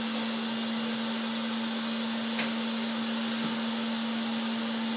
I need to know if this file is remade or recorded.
recorded